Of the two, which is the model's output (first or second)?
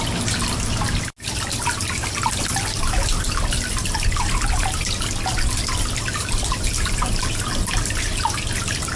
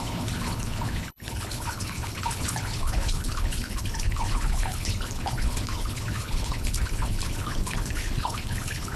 second